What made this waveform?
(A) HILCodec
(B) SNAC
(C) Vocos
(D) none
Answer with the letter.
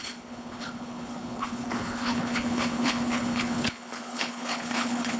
A